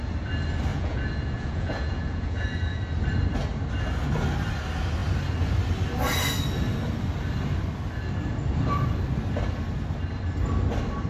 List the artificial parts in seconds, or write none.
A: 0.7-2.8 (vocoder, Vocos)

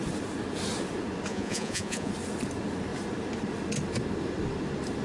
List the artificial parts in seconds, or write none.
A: 1.3-2.1 (vocoder, Vocos)

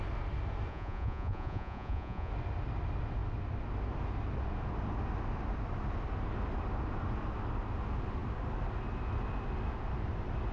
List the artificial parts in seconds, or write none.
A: 0.7-2.3 (vocoder, Vocos)